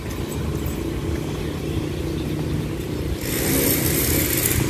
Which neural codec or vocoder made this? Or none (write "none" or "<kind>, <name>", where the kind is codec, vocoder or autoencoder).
none